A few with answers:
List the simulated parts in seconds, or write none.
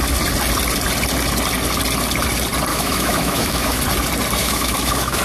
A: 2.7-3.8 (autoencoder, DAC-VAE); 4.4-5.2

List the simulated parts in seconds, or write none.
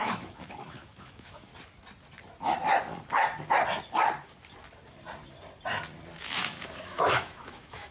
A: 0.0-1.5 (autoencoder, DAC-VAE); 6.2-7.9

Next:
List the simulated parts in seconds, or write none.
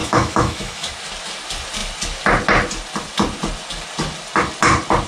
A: 0.0-0.9 (autoencoder, DAC-VAE)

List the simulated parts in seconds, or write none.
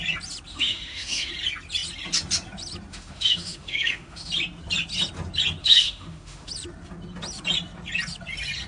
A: 0.5-1.3 (autoencoder, DAC-VAE); 2.9-4.3; 5.6-6.5